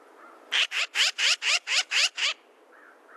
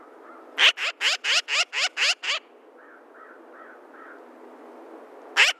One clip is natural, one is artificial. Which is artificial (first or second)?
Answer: first